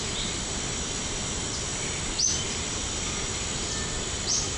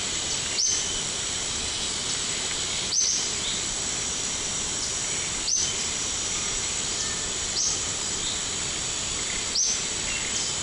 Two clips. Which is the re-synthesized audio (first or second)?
second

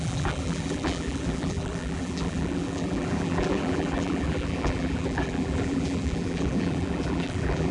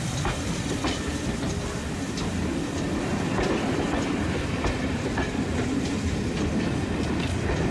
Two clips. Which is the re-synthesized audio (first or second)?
first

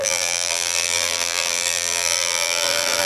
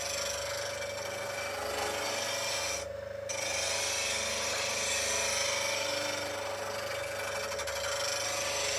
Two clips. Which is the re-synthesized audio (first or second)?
first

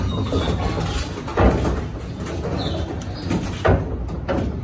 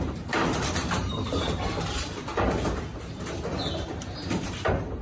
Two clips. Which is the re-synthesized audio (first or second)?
second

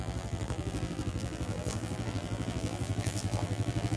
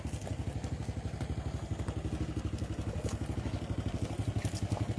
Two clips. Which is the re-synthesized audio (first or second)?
first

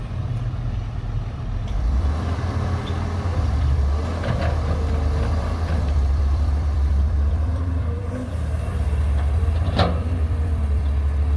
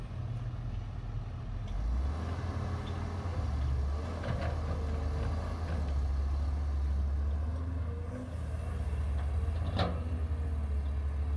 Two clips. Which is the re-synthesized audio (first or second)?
first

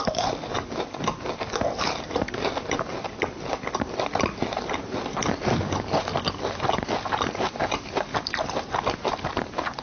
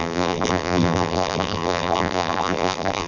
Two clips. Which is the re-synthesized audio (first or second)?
second